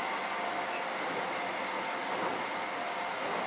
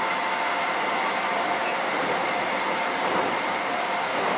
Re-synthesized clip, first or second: second